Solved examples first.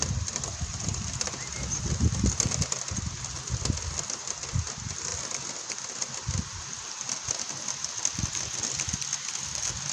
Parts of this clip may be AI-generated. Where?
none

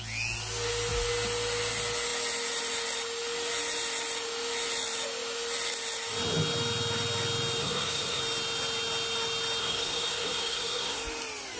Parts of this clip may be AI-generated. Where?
7.6-8.2 (codec, SNAC); 9.6-11.0

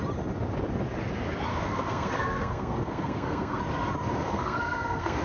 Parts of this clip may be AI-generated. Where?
1.5-3.6 (codec, SNAC); 4.2-5.2

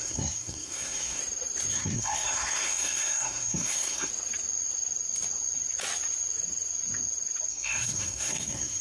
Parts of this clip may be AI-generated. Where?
0.0-1.2 (codec, SNAC); 1.7-4.1; 7.5-8.8

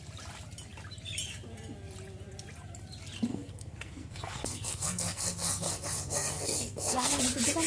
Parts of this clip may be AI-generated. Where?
3.3-7.2 (codec, SNAC)

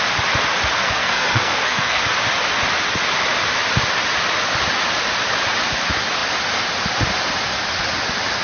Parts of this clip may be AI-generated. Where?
0.8-2.0 (codec, SNAC)

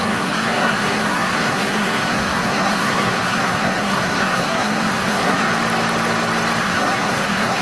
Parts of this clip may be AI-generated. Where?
0.0-5.5 (codec, SNAC); 6.6-7.6

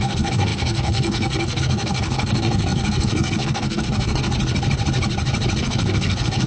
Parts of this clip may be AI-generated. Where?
0.0-4.3 (codec, SNAC); 5.6-6.5